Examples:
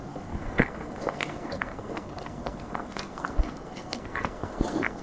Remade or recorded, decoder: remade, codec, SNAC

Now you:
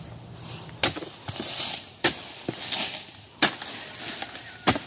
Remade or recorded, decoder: recorded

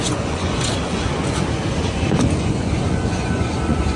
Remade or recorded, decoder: remade, vocoder, Vocos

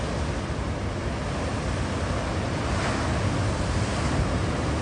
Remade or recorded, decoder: recorded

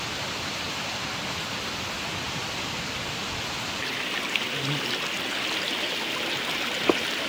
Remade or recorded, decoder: recorded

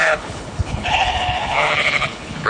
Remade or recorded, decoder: remade, codec, HILCodec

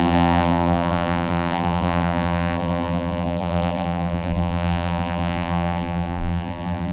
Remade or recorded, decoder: remade, vocoder, BigVGAN v2